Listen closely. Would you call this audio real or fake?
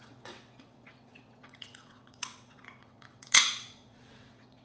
fake